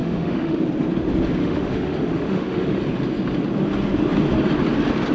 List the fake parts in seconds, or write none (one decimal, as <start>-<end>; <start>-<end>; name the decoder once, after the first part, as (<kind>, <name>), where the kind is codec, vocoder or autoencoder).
0.0-0.6 (autoencoder, DAC-VAE); 1.4-2.8

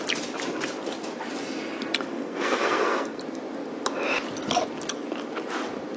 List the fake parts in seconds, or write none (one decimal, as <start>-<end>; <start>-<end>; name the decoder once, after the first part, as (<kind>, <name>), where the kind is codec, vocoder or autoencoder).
2.1-3.2 (codec, SNAC)

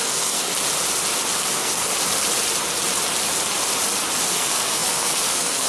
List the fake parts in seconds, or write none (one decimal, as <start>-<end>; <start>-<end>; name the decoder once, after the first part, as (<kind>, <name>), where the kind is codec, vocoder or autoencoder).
0.0-0.5 (codec, SNAC); 1.5-1.9; 4.3-5.7

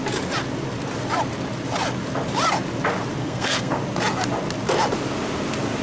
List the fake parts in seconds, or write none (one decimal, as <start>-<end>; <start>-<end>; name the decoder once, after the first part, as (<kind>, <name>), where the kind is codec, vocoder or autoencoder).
3.2-3.8 (codec, SNAC)

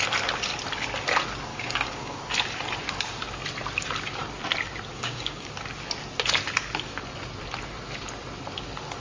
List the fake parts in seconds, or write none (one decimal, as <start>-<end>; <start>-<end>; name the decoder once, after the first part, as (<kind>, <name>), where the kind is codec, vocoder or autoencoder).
1.5-2.2 (codec, DAC); 4.9-5.5

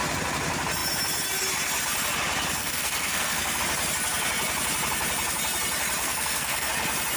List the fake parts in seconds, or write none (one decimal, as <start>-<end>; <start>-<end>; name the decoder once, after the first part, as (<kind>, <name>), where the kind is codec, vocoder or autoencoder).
2.6-3.6 (codec, SNAC); 6.0-6.7

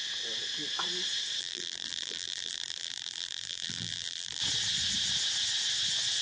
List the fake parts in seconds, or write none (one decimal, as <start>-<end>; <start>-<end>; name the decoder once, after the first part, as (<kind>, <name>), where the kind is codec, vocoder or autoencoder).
1.4-4.4 (vocoder, BigVGAN v2)

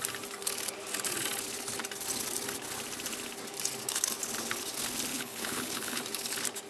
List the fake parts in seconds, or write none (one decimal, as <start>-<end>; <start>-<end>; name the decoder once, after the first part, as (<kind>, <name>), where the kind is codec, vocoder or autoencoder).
5.1-6.0 (codec, HILCodec)